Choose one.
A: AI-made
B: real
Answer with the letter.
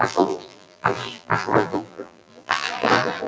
A